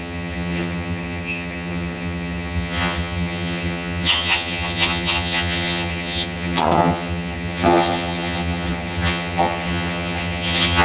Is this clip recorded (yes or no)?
no